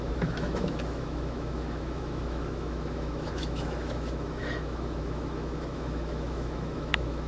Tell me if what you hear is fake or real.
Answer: fake